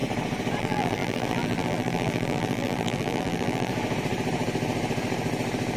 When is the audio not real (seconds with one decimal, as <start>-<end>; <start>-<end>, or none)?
0.6-3.7